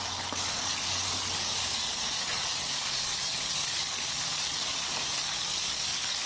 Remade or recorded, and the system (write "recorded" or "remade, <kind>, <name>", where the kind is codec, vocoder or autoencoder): remade, codec, DAC